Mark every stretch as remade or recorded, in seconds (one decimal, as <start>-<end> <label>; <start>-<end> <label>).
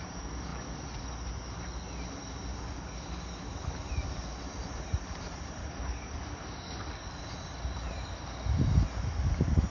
0.0-2.5 recorded; 2.5-3.9 remade; 3.9-5.6 recorded; 5.6-7.2 remade; 7.2-9.7 recorded